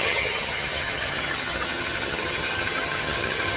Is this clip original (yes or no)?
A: no